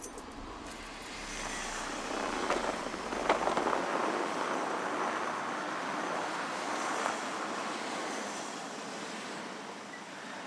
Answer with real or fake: real